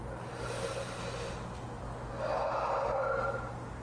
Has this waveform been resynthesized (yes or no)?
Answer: no